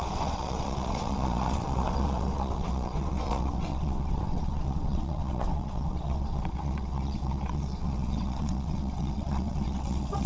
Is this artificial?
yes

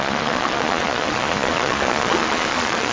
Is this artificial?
yes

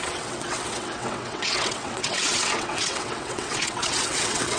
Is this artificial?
yes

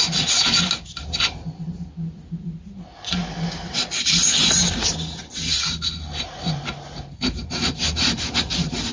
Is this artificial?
no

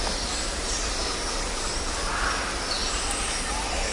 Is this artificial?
no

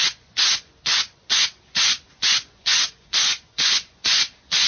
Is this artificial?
yes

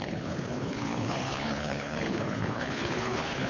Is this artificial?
yes